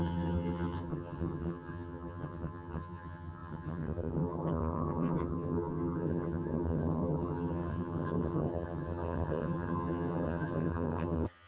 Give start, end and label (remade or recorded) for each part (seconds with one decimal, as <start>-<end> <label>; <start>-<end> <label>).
0.0-11.5 remade